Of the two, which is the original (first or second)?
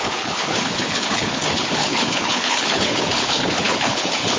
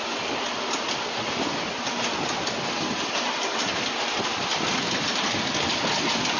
second